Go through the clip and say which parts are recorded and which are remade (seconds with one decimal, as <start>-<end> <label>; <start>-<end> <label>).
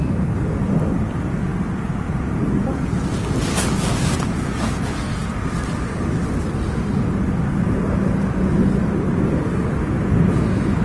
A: 0.0-10.8 recorded